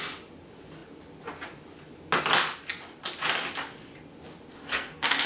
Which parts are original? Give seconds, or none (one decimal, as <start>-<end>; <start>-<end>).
0.0-4.6